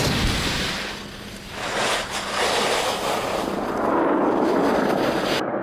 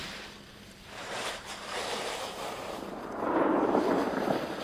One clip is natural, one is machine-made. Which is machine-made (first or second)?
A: second